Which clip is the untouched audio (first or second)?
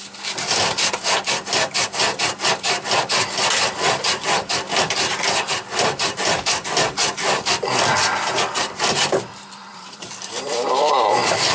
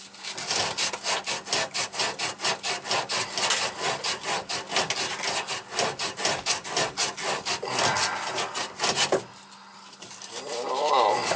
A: second